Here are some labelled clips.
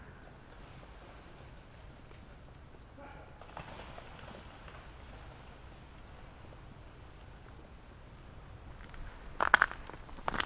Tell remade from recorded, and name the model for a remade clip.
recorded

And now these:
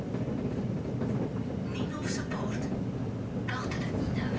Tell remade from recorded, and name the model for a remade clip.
recorded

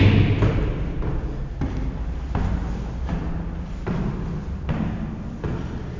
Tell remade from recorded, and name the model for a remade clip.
recorded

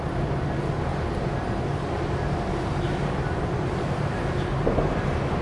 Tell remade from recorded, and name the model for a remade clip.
recorded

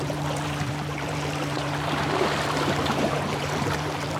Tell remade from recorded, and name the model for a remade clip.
remade, vocoder, BigVGAN v2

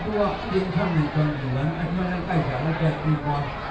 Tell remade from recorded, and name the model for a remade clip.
recorded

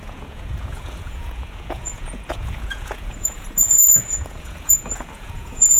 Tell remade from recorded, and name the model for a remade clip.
remade, vocoder, Vocos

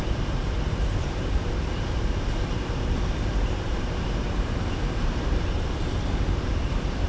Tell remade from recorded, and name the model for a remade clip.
remade, vocoder, BigVGAN v2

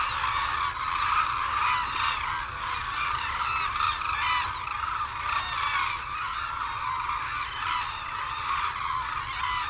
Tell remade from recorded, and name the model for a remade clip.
recorded